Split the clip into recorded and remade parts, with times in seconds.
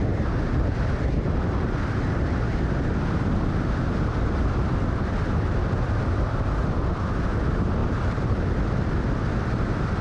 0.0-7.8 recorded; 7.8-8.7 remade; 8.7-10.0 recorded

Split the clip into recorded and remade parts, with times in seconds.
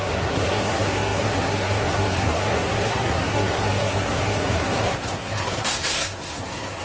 0.0-6.8 remade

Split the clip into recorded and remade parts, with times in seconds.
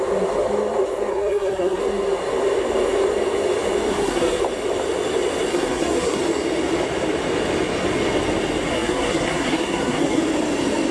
0.0-1.1 recorded; 1.1-1.8 remade; 1.8-3.9 recorded; 3.9-4.4 remade; 4.4-5.5 recorded; 5.5-6.2 remade; 6.2-8.7 recorded; 8.7-10.2 remade; 10.2-10.9 recorded